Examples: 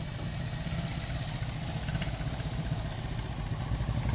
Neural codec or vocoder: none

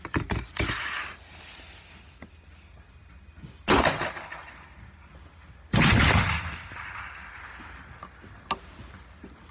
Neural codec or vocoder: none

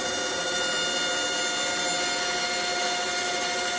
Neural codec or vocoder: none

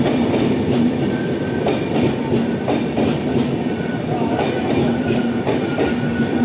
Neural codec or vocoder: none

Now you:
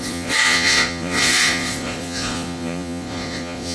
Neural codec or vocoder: vocoder, Vocos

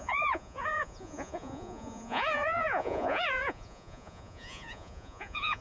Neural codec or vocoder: vocoder, Vocos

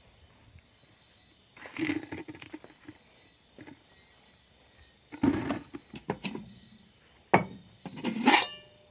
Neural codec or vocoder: none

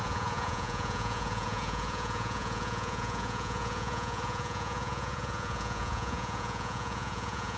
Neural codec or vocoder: vocoder, Vocos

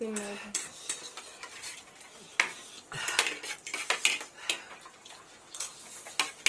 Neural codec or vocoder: none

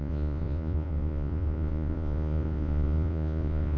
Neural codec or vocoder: vocoder, Vocos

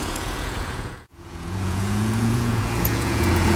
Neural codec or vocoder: vocoder, Vocos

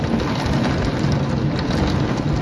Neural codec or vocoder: none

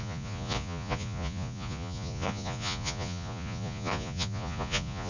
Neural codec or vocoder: vocoder, Vocos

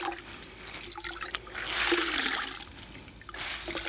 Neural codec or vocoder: none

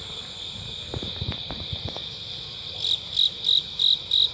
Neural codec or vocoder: none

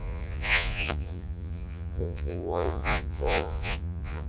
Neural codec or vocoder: vocoder, Vocos